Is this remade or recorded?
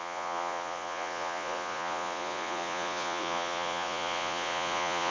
remade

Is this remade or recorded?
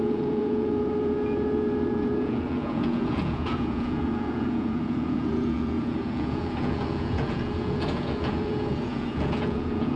remade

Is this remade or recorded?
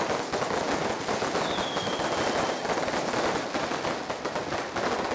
recorded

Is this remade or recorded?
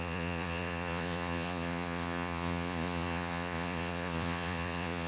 remade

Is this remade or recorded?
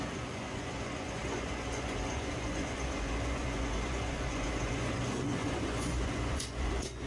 remade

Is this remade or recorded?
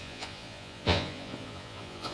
remade